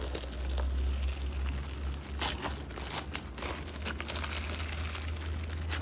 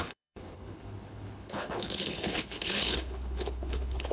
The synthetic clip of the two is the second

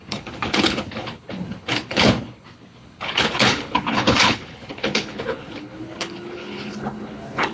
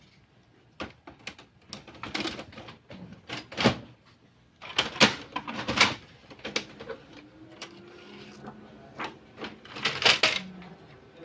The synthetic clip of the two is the first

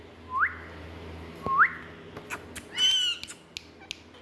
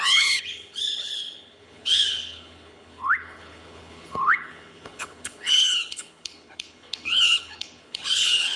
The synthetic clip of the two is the second